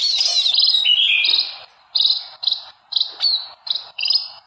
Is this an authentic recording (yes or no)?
yes